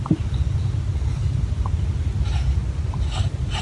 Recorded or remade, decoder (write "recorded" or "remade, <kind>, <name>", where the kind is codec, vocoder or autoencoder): recorded